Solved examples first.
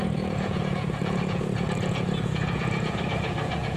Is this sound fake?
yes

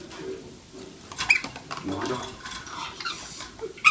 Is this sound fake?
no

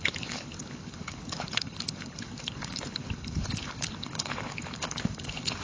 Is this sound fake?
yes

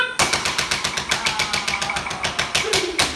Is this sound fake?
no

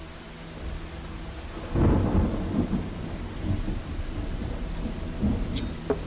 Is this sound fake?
no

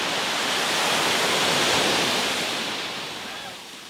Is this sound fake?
no